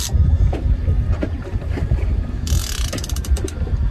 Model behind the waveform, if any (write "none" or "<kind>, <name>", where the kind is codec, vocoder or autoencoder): none